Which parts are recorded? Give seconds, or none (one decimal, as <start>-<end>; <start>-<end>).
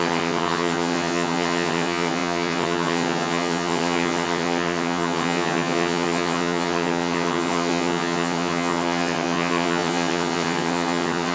none